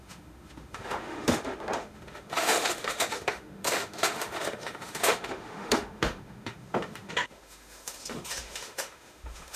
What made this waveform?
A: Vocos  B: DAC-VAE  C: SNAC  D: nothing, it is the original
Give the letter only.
B